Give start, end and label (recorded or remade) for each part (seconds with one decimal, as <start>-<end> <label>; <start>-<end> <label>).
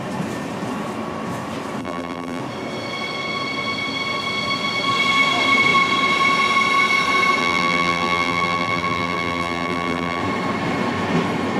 0.0-1.8 recorded; 1.8-2.4 remade; 2.4-7.4 recorded; 7.4-10.2 remade; 10.2-11.6 recorded